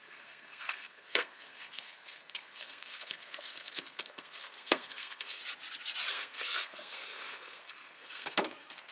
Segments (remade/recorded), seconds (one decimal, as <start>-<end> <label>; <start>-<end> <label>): 0.0-5.4 remade; 5.4-6.1 recorded; 6.1-8.9 remade